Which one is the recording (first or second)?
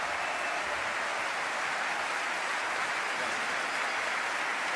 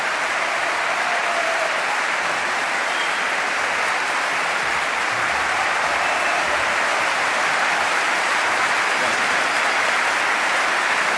first